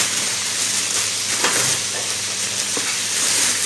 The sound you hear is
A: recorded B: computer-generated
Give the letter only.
B